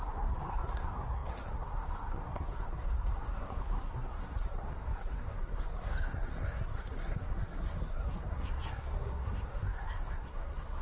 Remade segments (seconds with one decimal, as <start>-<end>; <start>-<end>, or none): 0.0-10.8